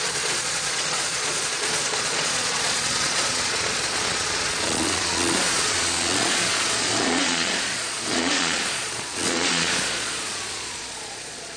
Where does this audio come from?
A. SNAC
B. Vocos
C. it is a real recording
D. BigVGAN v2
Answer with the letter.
B